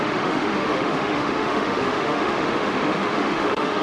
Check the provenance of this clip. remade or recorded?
remade